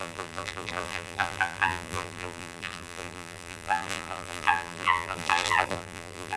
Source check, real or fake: fake